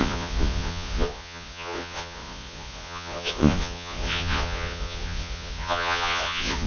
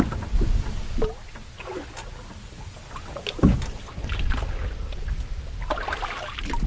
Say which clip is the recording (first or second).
second